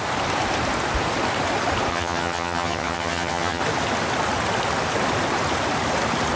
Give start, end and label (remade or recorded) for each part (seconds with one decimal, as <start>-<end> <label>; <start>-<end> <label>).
0.0-1.9 recorded; 1.9-3.6 remade; 3.6-6.4 recorded